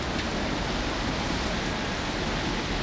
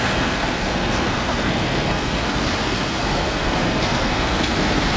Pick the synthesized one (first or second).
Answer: second